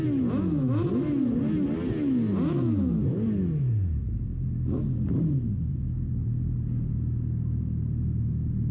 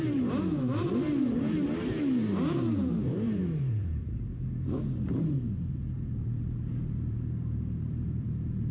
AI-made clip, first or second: second